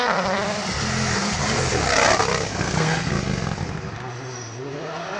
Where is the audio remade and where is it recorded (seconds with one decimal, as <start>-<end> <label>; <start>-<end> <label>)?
0.0-2.5 recorded; 2.5-3.1 remade; 3.1-5.2 recorded